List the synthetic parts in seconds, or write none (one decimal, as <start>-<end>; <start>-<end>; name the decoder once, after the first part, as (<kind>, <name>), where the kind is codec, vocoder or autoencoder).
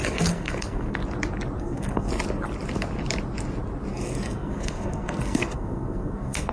0.0-1.0 (codec, SNAC); 1.6-2.1; 3.9-6.5